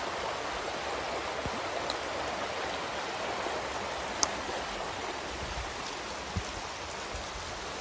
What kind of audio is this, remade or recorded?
recorded